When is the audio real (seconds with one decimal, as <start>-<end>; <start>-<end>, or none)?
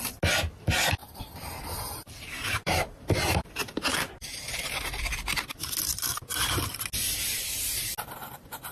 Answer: 0.0-1.0; 4.4-8.7